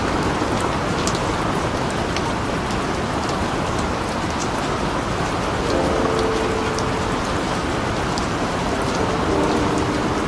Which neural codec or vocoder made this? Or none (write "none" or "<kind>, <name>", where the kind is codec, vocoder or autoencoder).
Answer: none